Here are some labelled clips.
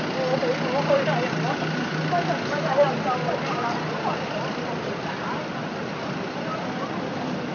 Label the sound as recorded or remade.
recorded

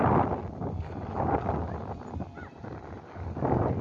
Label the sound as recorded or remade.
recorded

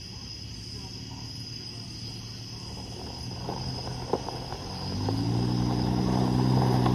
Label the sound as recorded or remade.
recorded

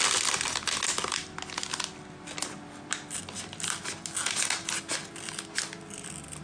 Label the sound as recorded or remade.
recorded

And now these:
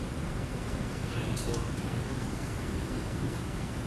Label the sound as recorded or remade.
remade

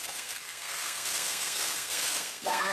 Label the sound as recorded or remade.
remade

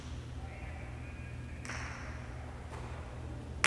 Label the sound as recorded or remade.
recorded